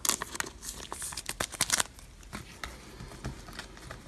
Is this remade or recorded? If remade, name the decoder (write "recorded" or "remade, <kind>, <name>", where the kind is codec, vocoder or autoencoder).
recorded